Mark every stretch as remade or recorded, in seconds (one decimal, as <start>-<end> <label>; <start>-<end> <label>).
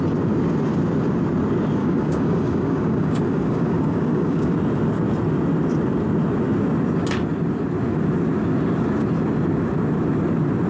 0.0-1.8 recorded; 1.8-4.5 remade; 4.5-10.7 recorded